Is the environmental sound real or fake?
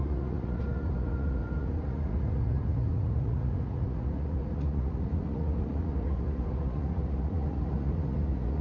fake